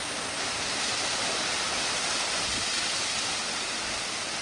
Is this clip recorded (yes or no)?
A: no